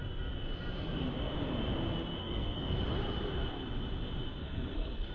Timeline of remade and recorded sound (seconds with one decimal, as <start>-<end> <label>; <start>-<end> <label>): 0.0-2.2 recorded; 2.2-2.8 remade; 2.8-4.4 recorded; 4.4-5.1 remade